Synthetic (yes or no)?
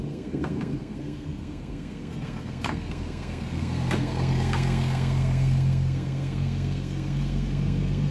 yes